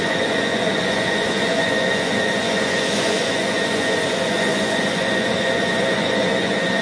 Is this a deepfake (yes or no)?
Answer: yes